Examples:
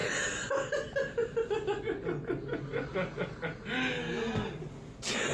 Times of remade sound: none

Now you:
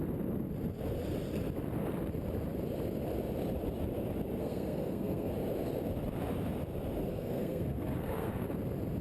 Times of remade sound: 4.4-5.3 (codec, SNAC); 7.1-8.5

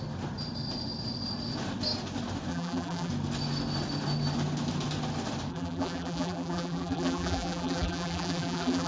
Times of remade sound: 2.5-3.1 (vocoder, BigVGAN v2); 5.5-8.9

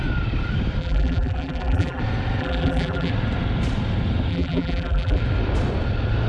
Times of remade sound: 0.8-2.0 (vocoder, BigVGAN v2); 2.4-3.1; 4.3-5.2